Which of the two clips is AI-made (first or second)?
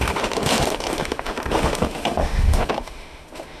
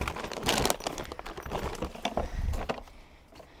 first